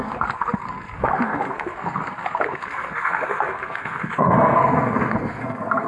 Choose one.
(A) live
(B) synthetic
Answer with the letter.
B